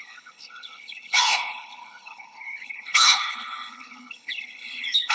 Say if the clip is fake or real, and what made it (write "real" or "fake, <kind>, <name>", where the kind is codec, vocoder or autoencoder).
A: fake, codec, HILCodec